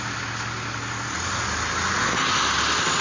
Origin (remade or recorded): recorded